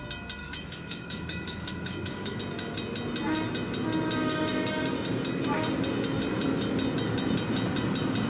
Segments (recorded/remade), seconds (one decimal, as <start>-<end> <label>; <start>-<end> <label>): 0.0-0.4 recorded; 0.4-2.4 remade; 2.4-8.3 recorded